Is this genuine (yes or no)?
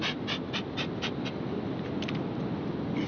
yes